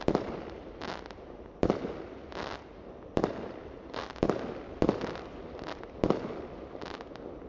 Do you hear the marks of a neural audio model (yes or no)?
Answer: no